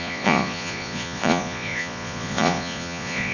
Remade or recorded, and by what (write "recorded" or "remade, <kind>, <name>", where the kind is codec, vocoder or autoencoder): remade, vocoder, Vocos